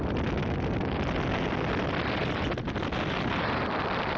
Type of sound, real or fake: real